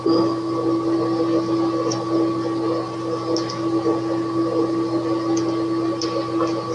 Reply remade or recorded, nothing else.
recorded